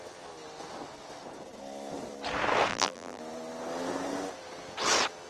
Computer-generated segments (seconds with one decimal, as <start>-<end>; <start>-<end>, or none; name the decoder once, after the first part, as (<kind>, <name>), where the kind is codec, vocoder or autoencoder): 2.7-3.2 (vocoder, BigVGAN v2)

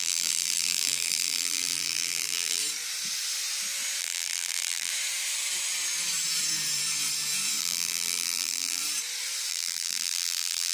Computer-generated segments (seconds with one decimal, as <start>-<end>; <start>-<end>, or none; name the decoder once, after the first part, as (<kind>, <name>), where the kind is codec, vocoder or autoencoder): 0.0-2.6 (vocoder, BigVGAN v2); 4.0-4.9; 7.6-8.8; 9.5-10.7

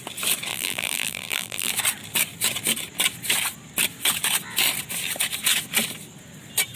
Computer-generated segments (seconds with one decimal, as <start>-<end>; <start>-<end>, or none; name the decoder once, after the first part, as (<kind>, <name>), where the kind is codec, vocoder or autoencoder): 0.5-1.7 (vocoder, BigVGAN v2)

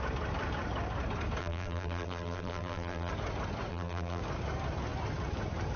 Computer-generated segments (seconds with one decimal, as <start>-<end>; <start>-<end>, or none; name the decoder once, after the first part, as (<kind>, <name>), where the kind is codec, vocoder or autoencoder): 1.4-3.1 (vocoder, BigVGAN v2); 3.7-4.2

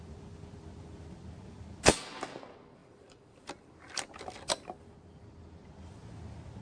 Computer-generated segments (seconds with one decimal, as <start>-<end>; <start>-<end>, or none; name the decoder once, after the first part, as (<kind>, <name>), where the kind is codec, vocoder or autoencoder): 2.8-4.4 (vocoder, BigVGAN v2)

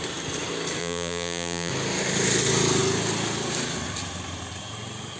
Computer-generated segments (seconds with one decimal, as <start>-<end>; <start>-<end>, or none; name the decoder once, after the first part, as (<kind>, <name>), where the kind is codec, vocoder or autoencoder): 0.8-1.7 (vocoder, BigVGAN v2)

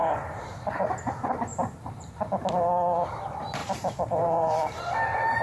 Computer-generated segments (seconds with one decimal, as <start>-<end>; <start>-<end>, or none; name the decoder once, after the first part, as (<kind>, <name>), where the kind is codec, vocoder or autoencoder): 0.0-0.8 (vocoder, BigVGAN v2); 1.5-2.1; 3.6-4.8